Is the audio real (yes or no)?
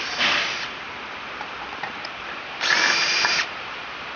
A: no